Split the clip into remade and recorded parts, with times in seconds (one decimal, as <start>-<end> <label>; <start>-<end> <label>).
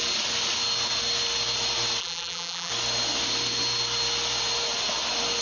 0.0-2.0 recorded; 2.0-2.7 remade; 2.7-5.4 recorded